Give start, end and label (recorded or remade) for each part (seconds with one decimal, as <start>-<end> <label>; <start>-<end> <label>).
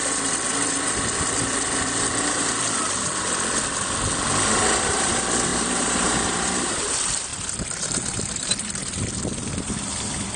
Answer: 0.0-4.5 recorded; 4.5-5.1 remade; 5.1-5.5 recorded; 5.5-6.8 remade; 6.8-10.4 recorded